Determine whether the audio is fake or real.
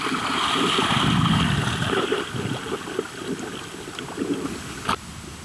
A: real